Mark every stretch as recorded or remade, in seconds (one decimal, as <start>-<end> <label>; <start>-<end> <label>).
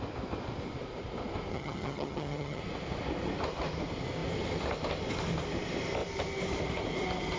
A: 0.0-1.5 recorded; 1.5-2.6 remade; 2.6-7.4 recorded